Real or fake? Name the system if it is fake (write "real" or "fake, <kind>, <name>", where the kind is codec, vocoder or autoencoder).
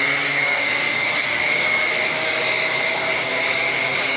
fake, codec, DAC